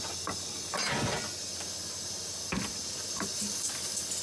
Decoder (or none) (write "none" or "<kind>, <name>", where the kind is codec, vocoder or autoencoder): none